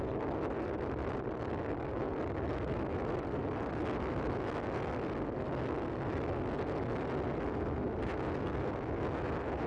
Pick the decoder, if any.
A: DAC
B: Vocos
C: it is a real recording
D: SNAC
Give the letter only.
C